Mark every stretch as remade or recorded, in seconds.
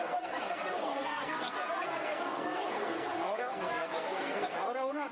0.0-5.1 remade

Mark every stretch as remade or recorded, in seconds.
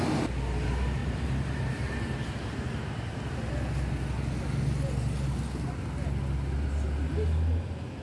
0.0-1.0 recorded; 1.0-1.9 remade; 1.9-8.0 recorded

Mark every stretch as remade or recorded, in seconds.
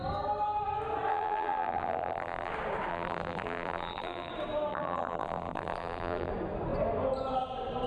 0.0-1.1 recorded; 1.1-2.5 remade; 2.5-2.9 recorded; 2.9-4.3 remade; 4.3-4.7 recorded; 4.7-6.3 remade; 6.3-7.9 recorded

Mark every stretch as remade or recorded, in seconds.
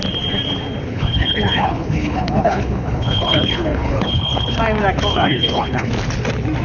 0.0-0.9 recorded; 0.9-4.6 remade; 4.6-5.1 recorded; 5.1-5.9 remade; 5.9-6.6 recorded